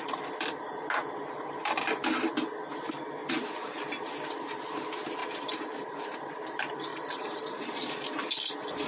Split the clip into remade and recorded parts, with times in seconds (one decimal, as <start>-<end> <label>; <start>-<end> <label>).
0.0-3.2 recorded; 3.2-3.9 remade; 3.9-5.2 recorded; 5.2-6.2 remade; 6.2-6.9 recorded; 6.9-7.9 remade; 7.9-8.9 recorded

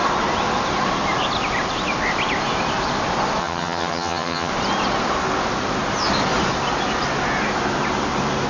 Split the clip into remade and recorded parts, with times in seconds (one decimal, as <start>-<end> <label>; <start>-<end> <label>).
0.0-3.4 recorded; 3.4-4.5 remade; 4.5-8.5 recorded

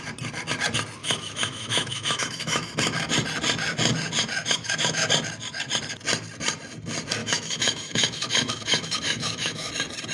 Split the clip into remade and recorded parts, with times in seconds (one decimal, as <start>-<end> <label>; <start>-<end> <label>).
0.0-1.0 recorded; 1.0-2.7 remade; 2.7-4.4 recorded; 4.4-5.1 remade; 5.1-7.2 recorded; 7.2-9.7 remade; 9.7-10.1 recorded

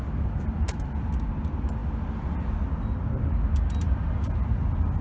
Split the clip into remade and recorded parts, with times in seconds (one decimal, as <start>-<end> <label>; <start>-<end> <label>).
0.0-5.0 recorded

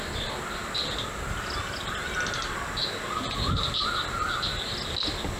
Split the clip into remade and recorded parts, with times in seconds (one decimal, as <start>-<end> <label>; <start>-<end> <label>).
0.0-5.4 recorded

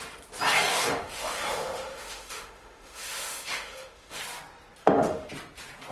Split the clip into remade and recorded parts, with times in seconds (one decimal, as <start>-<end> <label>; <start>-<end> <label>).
0.0-0.7 recorded; 0.7-4.2 remade; 4.2-4.8 recorded; 4.8-5.3 remade; 5.3-5.9 recorded